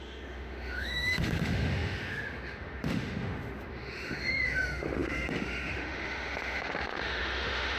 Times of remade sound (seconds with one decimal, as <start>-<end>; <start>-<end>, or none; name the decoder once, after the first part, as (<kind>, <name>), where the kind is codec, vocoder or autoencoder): 0.0-7.8 (autoencoder, DAC-VAE)

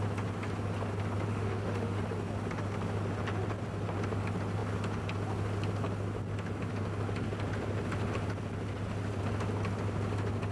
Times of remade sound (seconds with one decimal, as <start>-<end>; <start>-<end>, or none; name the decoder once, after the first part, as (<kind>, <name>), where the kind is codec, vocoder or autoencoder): 1.3-2.0 (autoencoder, DAC-VAE)

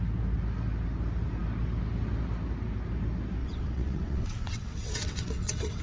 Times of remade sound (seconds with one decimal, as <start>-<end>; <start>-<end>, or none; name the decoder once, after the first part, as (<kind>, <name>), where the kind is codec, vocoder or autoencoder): 3.4-5.8 (vocoder, WaveNeXt)

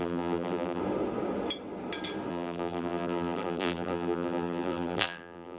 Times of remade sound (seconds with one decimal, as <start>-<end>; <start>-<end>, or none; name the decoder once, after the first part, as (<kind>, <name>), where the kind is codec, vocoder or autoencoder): 0.0-0.8 (vocoder, BigVGAN v2); 2.3-5.6

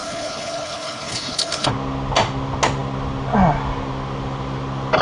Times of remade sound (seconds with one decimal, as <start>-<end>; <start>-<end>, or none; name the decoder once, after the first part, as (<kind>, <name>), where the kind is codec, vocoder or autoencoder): 0.0-1.7 (codec, HILCodec)